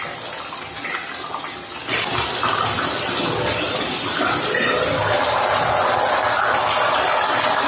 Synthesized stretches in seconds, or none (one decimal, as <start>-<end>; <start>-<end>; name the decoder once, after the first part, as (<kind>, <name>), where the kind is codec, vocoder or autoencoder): none